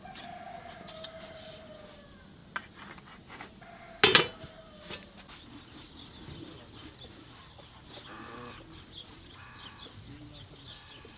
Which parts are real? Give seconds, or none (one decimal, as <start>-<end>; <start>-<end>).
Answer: 0.0-11.2